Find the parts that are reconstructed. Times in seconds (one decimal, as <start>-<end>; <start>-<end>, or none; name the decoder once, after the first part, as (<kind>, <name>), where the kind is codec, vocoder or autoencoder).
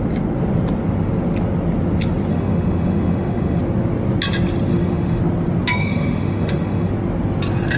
2.3-3.6 (autoencoder, DAC-VAE); 4.7-5.2; 5.8-6.9